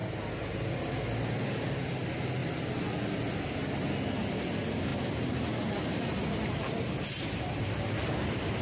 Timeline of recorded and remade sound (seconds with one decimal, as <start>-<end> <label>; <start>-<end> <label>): 0.0-8.6 recorded